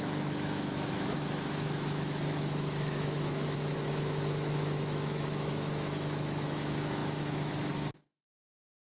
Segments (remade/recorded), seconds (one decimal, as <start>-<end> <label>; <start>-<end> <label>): 0.0-8.9 remade